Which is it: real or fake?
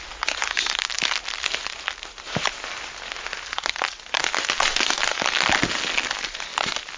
real